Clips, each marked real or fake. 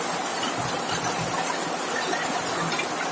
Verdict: real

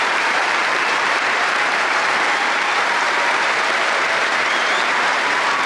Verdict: fake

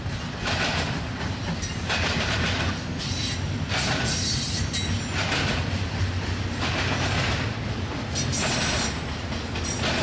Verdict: real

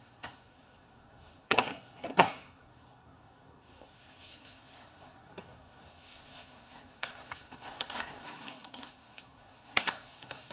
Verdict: fake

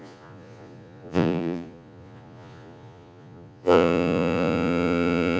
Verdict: fake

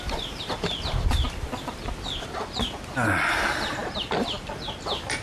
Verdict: fake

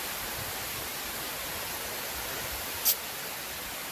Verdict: real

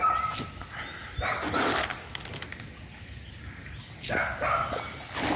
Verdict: real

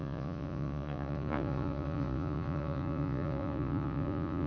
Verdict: fake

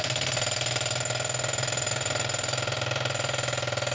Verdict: real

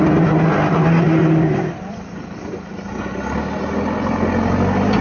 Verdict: real